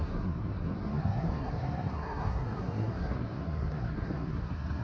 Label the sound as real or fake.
fake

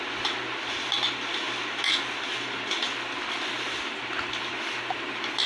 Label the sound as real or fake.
real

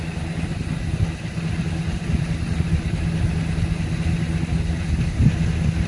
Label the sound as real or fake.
real